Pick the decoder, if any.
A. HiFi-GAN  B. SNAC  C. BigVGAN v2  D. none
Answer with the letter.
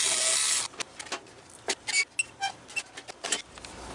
D